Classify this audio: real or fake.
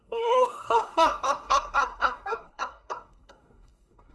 fake